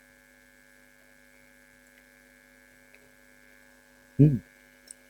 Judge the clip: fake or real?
real